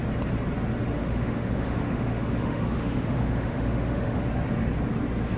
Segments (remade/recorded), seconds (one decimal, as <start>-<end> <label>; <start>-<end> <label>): 0.0-1.0 recorded; 1.0-4.2 remade; 4.2-5.4 recorded